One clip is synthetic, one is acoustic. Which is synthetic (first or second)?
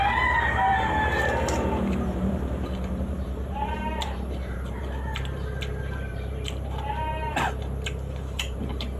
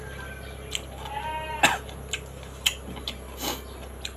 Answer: first